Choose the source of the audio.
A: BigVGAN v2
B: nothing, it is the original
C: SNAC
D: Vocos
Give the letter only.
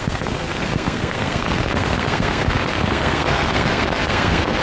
C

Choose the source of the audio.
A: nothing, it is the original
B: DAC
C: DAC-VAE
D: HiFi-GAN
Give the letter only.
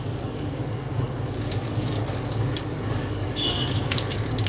B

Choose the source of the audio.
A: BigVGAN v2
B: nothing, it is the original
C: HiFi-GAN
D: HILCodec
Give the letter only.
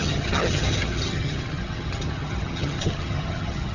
C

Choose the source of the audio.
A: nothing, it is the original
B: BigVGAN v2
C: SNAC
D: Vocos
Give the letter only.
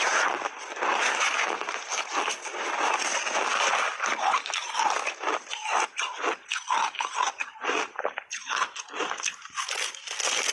A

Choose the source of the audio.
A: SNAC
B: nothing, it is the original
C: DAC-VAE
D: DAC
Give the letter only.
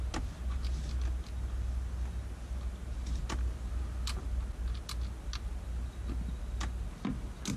B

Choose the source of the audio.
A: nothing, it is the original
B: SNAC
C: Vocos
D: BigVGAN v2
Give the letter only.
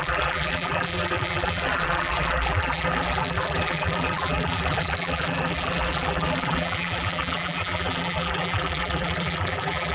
D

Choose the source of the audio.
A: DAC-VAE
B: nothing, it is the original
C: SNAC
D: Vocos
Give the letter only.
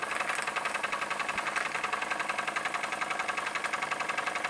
B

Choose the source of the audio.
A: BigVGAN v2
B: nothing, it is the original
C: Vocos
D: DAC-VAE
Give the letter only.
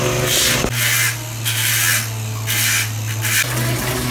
B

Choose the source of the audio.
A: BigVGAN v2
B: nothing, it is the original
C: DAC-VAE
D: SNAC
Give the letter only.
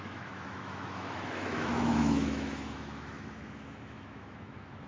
C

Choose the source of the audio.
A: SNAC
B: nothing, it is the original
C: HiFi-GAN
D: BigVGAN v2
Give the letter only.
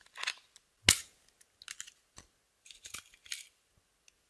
B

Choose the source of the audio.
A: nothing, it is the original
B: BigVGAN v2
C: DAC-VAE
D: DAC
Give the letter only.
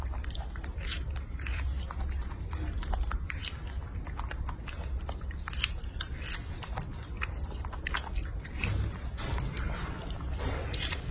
B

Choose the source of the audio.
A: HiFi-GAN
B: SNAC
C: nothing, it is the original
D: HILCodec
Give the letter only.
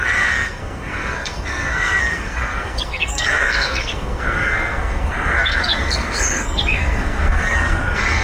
B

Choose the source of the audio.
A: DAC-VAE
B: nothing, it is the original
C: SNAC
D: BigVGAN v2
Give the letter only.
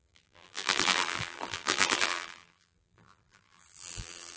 D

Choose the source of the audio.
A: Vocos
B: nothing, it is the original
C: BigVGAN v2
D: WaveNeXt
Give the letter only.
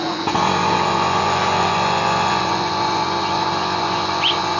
A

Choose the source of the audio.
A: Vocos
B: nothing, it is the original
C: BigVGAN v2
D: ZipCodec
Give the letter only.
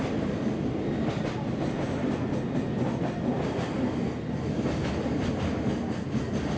B